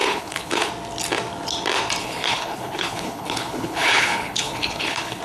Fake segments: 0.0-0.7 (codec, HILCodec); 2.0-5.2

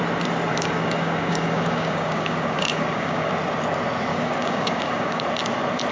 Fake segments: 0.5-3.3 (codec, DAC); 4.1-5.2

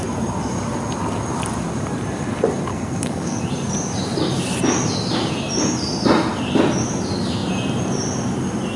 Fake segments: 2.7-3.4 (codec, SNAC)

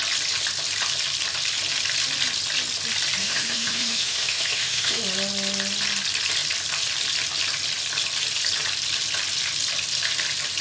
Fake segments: 3.2-5.0 (autoencoder, DAC-VAE)

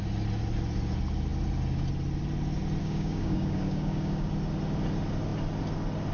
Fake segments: 2.8-4.3 (codec, DAC)